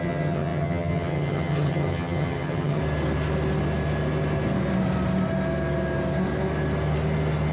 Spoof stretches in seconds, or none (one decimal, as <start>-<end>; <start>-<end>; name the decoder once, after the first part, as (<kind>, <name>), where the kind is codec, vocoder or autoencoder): 0.0-2.8 (vocoder, HiFi-GAN)